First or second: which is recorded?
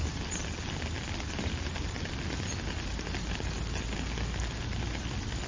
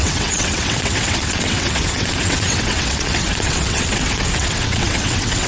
first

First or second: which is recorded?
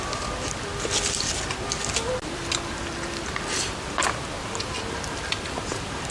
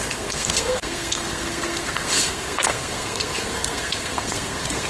first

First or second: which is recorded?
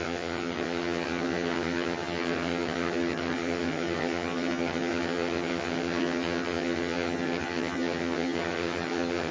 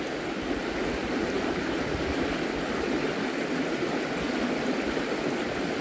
second